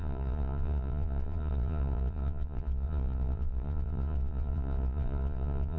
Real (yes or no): no